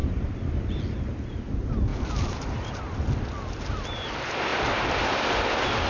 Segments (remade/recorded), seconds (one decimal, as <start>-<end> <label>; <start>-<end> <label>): 0.0-0.8 remade; 0.8-1.9 recorded; 1.9-2.7 remade; 2.7-4.5 recorded; 4.5-5.0 remade; 5.0-5.9 recorded